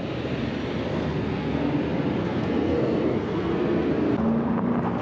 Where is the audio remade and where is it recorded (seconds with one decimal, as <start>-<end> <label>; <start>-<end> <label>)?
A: 0.0-0.9 recorded; 0.9-1.7 remade; 1.7-2.2 recorded; 2.2-3.9 remade; 3.9-5.0 recorded